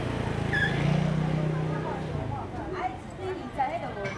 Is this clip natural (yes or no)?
yes